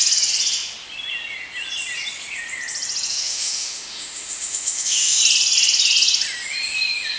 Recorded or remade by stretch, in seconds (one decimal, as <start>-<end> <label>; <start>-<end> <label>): 0.0-3.1 recorded; 3.1-5.2 remade; 5.2-7.2 recorded